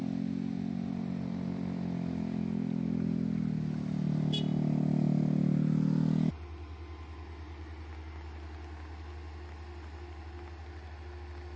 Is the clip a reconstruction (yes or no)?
no